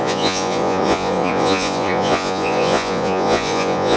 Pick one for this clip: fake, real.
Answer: fake